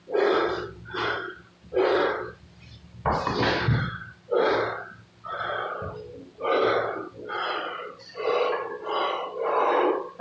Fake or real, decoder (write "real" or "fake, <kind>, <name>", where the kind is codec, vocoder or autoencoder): real